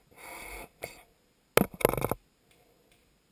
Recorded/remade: recorded